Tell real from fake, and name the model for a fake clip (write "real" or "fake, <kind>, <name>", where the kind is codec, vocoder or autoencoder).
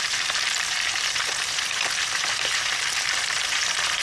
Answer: fake, vocoder, BigVGAN v2